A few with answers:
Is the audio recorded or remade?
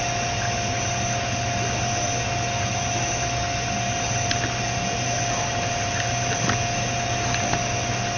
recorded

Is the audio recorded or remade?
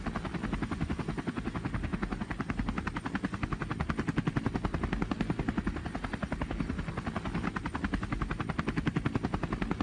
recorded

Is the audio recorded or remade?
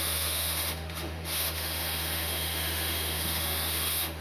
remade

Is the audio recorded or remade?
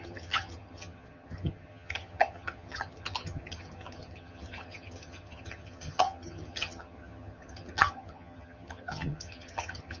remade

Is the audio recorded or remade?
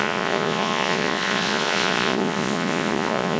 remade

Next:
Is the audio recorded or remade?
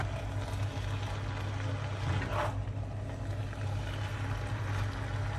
recorded